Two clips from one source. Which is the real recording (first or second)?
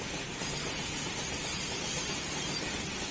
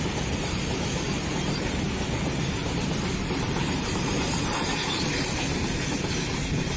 first